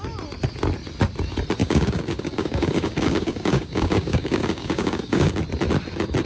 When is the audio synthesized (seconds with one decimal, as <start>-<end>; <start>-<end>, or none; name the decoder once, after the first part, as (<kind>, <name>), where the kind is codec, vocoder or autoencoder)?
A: 1.6-5.4 (codec, DAC)